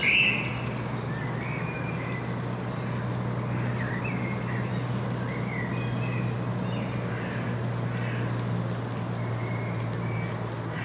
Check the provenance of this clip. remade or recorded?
recorded